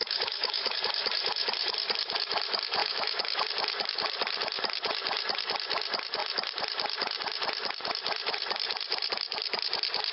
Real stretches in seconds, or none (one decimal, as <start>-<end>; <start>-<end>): 0.8-2.8; 3.4-10.1